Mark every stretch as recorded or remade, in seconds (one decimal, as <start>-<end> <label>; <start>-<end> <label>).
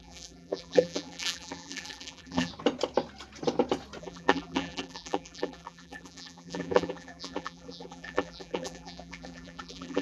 0.0-2.5 remade; 2.5-4.0 recorded; 4.0-10.0 remade